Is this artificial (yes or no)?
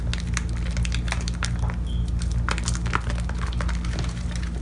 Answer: no